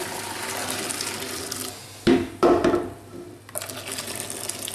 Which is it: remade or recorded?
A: recorded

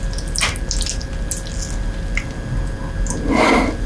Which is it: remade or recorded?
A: recorded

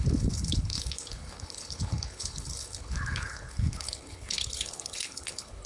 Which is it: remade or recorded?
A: remade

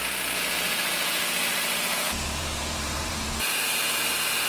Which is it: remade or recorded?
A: remade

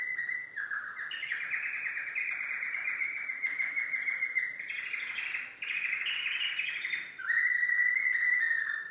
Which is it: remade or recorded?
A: recorded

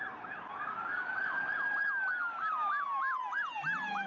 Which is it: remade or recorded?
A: recorded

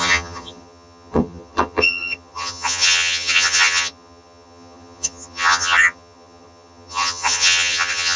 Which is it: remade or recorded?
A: remade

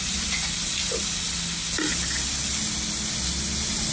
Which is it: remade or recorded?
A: recorded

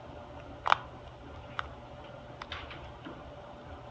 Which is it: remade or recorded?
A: recorded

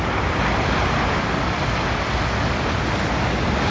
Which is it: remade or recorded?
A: recorded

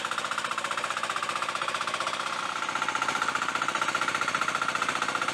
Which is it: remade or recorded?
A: recorded